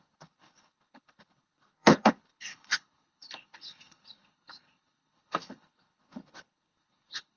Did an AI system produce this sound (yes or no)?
yes